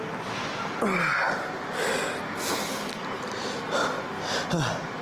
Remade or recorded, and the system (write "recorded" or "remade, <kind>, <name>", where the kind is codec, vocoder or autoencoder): recorded